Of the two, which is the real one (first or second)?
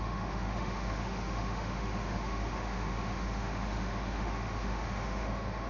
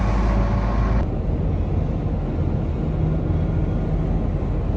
second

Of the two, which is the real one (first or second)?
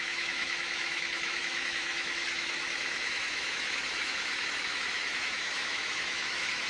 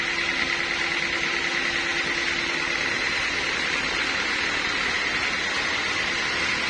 second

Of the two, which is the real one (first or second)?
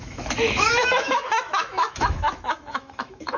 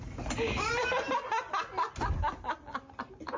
second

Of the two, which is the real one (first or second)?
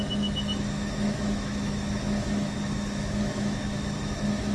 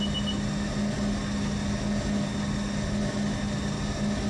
second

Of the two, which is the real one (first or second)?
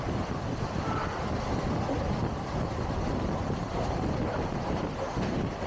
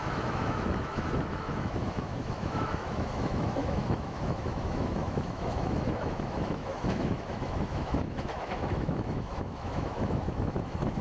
first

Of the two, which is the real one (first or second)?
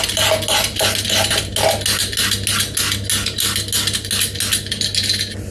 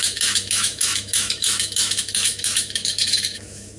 first